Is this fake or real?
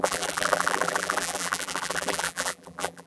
fake